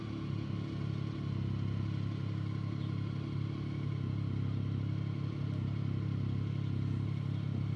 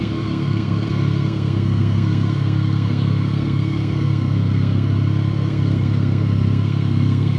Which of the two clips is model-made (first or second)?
second